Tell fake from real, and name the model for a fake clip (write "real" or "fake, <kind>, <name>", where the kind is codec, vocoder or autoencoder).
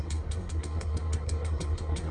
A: fake, codec, SNAC